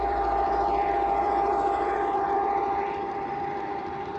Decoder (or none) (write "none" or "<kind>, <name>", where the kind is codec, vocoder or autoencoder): vocoder, BigVGAN v2